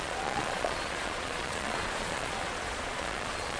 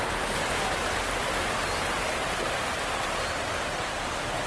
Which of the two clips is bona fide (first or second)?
second